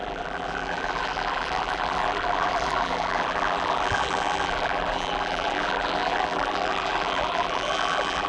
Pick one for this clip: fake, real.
fake